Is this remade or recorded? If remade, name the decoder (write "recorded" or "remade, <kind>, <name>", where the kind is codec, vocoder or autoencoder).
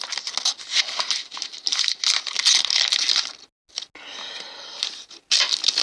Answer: recorded